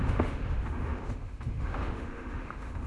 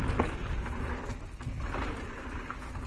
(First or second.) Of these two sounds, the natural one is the second